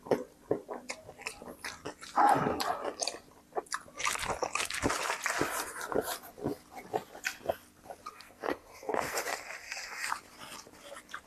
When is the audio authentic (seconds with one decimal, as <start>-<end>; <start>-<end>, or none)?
0.0-8.1; 10.1-11.3